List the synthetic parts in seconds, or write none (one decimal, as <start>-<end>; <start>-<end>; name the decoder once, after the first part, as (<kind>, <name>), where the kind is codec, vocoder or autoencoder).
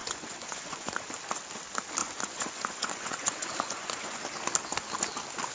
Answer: 0.0-1.0 (vocoder, Vocos); 2.0-4.2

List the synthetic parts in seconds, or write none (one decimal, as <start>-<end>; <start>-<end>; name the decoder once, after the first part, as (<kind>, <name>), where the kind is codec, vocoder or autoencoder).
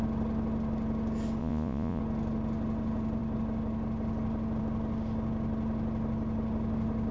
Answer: 1.4-2.0 (vocoder, Vocos)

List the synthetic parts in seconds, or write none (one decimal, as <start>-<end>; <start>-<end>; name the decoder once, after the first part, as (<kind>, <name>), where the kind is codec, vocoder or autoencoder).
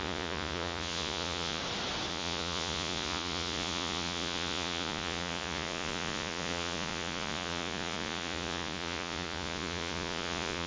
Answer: 0.0-1.6 (vocoder, Vocos); 2.1-10.7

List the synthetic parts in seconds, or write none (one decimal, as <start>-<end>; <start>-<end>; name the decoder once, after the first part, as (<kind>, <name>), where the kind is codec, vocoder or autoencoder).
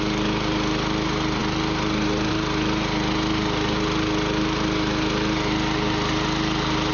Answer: none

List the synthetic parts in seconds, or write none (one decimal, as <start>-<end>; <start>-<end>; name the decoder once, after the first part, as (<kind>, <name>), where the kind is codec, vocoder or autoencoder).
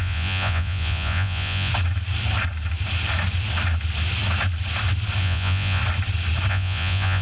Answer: 0.0-1.7 (vocoder, Vocos); 5.2-5.8; 6.5-7.2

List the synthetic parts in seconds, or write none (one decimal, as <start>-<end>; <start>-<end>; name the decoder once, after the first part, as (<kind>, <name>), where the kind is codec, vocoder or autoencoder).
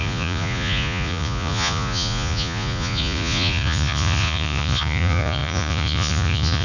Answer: 0.0-6.6 (vocoder, Vocos)